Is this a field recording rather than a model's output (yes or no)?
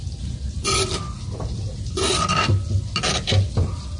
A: yes